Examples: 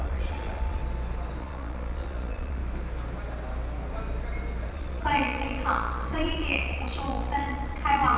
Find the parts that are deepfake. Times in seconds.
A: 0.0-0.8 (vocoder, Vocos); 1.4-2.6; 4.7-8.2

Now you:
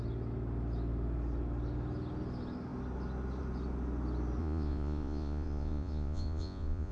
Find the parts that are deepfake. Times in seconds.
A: 4.4-6.9 (vocoder, Vocos)

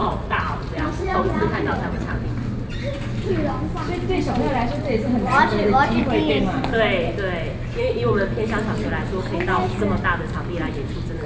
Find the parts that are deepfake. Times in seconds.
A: 0.0-2.2 (vocoder, Vocos)

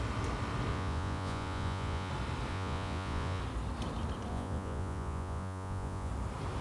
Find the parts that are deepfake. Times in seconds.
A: 0.7-2.1 (vocoder, Vocos); 2.5-3.4; 4.3-6.1